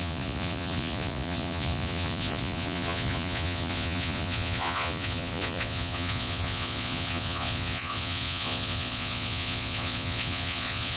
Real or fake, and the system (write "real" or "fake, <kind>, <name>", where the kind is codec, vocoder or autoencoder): fake, vocoder, Vocos